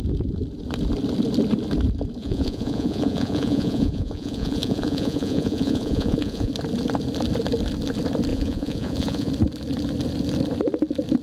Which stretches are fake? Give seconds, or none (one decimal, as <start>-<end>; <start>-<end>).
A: 2.2-6.5; 8.3-9.3